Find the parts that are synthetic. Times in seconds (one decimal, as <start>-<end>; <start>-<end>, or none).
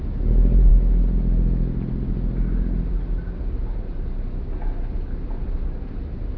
none